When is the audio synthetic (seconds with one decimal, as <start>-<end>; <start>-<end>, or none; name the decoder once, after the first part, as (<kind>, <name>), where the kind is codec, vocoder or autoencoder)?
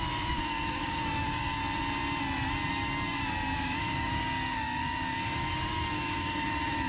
0.0-1.6 (codec, DAC); 2.7-6.9